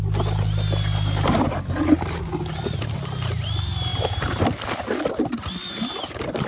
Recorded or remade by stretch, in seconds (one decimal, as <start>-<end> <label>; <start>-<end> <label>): 0.0-3.9 recorded; 3.9-6.5 remade